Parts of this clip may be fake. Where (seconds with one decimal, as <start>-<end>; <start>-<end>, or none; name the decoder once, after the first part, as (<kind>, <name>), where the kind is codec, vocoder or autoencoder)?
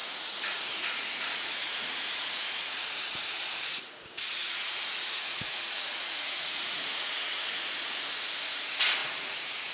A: 0.0-9.7 (vocoder, Vocos)